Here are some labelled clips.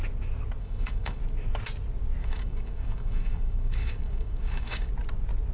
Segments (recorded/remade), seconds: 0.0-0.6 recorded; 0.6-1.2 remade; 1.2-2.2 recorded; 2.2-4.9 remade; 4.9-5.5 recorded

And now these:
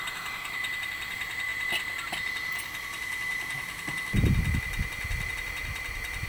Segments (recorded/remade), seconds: 0.0-6.3 recorded

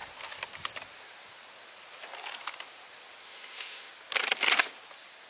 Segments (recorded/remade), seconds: 0.0-3.2 recorded; 3.2-3.9 remade; 3.9-5.3 recorded

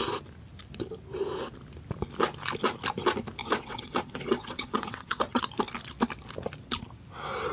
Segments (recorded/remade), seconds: 0.0-3.4 recorded; 3.4-5.4 remade; 5.4-7.5 recorded

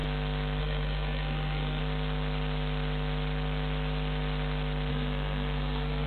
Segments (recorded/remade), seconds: 0.0-0.6 recorded; 0.6-1.8 remade; 1.8-4.9 recorded; 4.9-6.1 remade